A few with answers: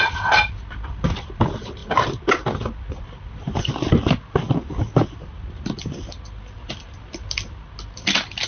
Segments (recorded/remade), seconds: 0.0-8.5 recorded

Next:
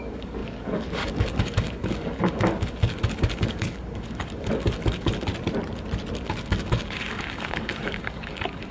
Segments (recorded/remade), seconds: 0.0-5.3 remade; 5.3-6.1 recorded; 6.1-8.7 remade

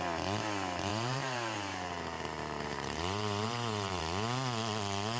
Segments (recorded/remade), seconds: 0.0-0.9 recorded; 0.9-4.0 remade; 4.0-5.2 recorded

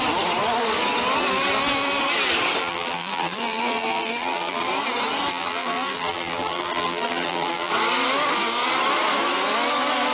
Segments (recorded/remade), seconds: 0.0-2.6 recorded; 2.6-4.7 remade; 4.7-5.3 recorded; 5.3-7.7 remade; 7.7-10.1 recorded